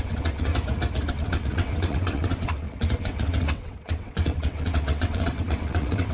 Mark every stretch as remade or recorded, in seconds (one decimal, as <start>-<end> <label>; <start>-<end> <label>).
0.0-0.5 remade; 0.5-1.1 recorded; 1.1-6.1 remade